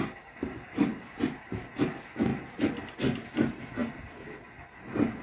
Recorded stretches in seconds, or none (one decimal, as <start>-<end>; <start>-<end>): 0.0-5.2